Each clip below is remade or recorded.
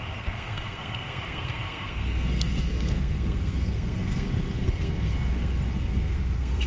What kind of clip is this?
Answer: remade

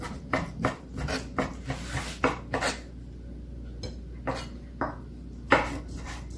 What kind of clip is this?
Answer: recorded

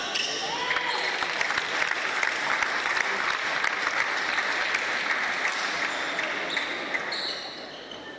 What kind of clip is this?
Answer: recorded